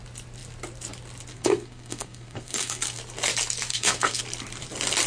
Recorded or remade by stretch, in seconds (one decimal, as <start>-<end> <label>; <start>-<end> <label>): 0.0-1.3 recorded; 1.3-3.0 remade; 3.0-3.7 recorded; 3.7-4.2 remade; 4.2-5.1 recorded